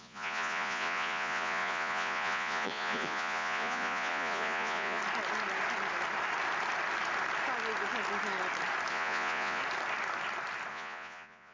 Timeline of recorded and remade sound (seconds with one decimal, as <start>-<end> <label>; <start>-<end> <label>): 0.0-5.0 remade; 5.0-8.9 recorded; 8.9-9.6 remade; 9.6-10.7 recorded; 10.7-11.5 remade